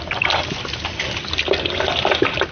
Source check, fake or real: real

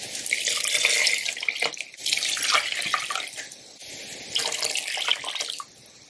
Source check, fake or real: real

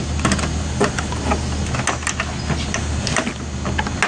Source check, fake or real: real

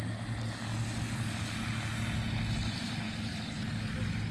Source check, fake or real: real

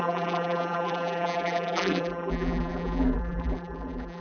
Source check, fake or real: fake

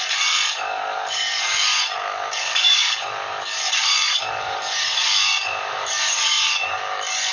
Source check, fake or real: fake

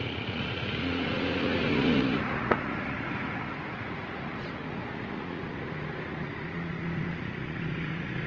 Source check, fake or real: fake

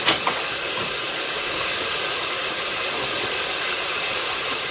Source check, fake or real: fake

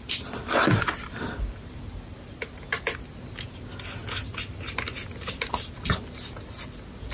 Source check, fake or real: real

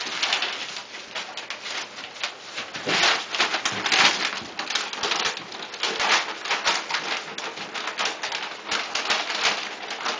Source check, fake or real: real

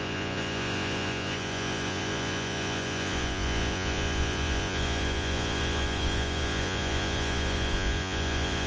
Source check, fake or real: fake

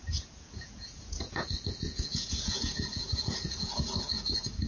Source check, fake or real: fake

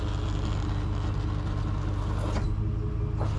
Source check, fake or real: real